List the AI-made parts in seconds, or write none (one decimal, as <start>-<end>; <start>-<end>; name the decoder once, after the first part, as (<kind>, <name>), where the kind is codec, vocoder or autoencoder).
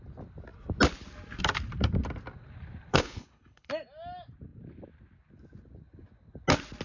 2.9-3.7 (codec, HILCodec)